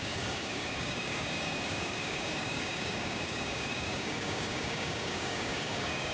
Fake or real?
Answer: fake